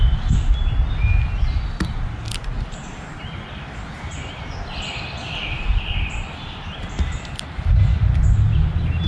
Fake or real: real